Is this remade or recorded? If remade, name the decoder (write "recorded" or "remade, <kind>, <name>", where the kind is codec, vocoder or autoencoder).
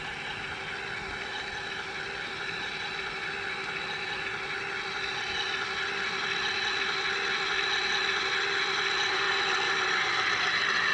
recorded